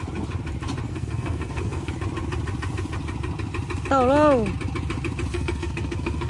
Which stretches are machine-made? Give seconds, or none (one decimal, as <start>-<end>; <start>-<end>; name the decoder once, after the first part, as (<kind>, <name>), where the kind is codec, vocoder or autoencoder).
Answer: 0.9-1.9 (codec, SNAC); 5.3-6.3